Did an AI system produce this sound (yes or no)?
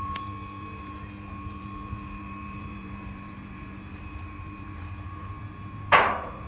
yes